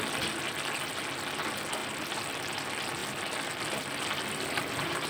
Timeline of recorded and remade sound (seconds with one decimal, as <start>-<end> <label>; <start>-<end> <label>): 0.0-5.1 recorded

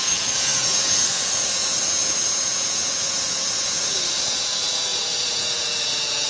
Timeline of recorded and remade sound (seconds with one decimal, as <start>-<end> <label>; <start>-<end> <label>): 0.0-6.3 remade

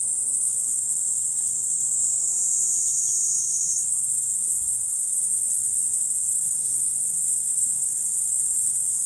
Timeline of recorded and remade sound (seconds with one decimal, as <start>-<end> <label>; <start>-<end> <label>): 0.0-2.3 remade; 2.3-3.4 recorded; 3.4-9.1 remade

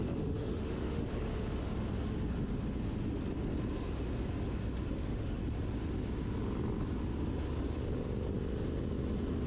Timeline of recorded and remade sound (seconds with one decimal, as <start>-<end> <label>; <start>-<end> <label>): 0.0-1.1 remade; 1.1-4.9 recorded; 4.9-5.4 remade; 5.4-9.5 recorded